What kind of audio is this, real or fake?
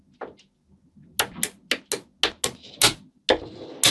real